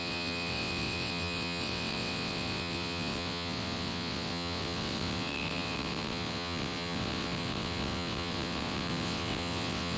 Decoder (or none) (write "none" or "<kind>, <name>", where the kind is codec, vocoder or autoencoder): vocoder, WaveNeXt